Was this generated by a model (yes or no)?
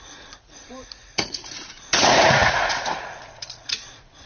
yes